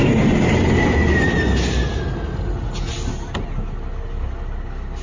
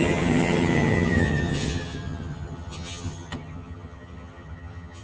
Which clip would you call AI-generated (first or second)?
second